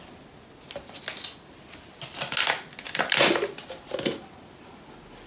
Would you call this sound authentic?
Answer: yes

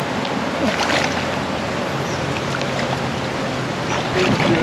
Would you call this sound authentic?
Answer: yes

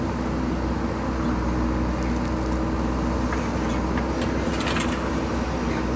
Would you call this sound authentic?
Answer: yes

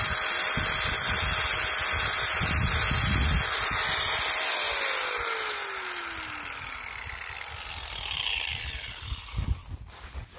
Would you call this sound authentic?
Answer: yes